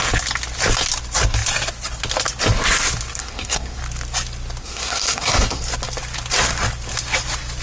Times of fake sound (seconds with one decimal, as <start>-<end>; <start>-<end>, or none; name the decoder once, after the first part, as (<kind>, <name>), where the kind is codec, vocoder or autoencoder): 3.2-3.8 (codec, SNAC); 4.6-5.6